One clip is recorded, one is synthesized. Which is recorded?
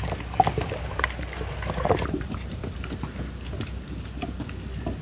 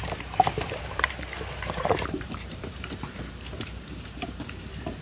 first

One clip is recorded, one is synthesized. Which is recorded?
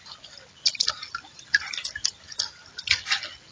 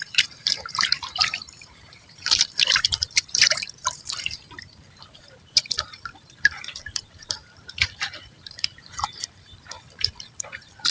first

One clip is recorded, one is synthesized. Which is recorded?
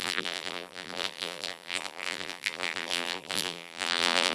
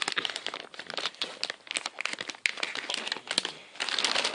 second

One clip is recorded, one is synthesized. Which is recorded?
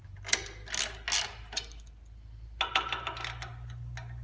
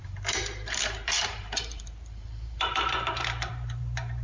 first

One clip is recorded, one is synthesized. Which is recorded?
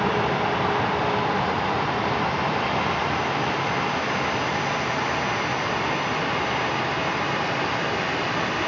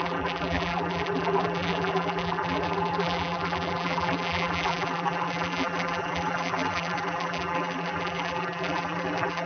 first